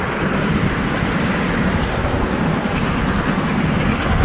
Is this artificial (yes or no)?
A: no